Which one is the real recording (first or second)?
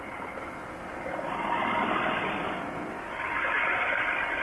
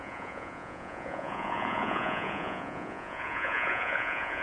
first